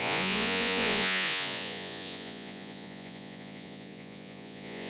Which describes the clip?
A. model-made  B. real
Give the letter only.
A